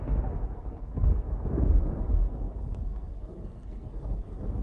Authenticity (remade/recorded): remade